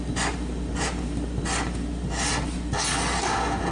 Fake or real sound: real